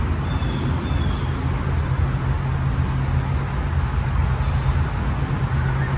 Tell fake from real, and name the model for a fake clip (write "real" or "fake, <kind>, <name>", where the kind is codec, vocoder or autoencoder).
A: real